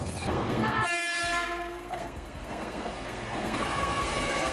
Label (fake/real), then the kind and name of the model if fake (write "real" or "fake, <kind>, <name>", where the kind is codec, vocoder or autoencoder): fake, codec, SNAC